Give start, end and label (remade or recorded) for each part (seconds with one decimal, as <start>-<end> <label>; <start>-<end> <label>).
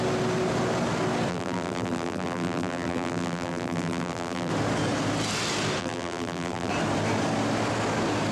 0.0-1.3 recorded; 1.3-4.5 remade; 4.5-5.8 recorded; 5.8-6.7 remade; 6.7-8.3 recorded